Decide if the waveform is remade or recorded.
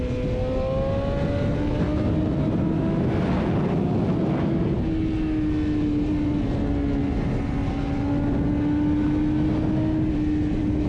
recorded